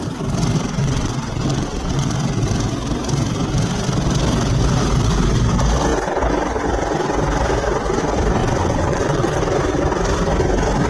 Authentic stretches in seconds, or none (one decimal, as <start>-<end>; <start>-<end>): 0.0-0.8; 2.1-8.4; 9.4-10.9